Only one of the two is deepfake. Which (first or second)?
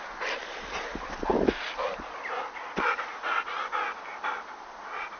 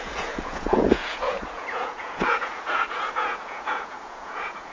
second